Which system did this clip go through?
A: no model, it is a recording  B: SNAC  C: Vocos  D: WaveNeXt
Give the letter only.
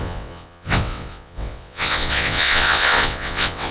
D